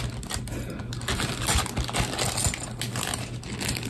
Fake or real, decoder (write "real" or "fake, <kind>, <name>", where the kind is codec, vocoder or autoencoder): real